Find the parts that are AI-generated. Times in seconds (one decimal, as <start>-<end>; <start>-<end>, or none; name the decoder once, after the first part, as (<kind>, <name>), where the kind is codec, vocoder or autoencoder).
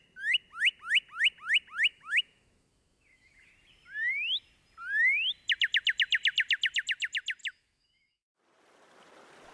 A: 1.9-3.5 (autoencoder, DAC-VAE); 7.4-8.4